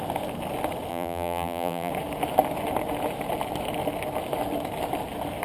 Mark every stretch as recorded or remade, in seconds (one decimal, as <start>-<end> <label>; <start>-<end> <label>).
0.0-0.9 recorded; 0.9-1.9 remade; 1.9-5.4 recorded